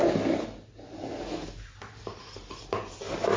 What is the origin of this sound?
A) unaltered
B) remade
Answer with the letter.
A